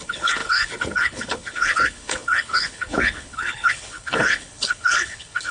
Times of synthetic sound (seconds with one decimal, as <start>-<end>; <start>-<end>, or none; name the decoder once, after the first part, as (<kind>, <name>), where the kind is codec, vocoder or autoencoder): 0.0-5.5 (codec, HILCodec)